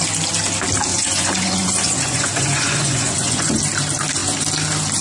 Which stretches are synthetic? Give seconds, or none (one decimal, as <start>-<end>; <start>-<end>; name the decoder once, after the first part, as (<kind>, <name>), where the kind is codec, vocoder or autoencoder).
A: 0.9-3.6 (vocoder, Vocos)